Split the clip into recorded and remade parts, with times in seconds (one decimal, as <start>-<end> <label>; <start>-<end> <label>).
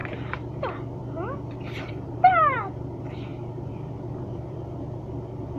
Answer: 0.0-0.6 recorded; 0.6-1.0 remade; 1.0-1.9 recorded; 1.9-5.6 remade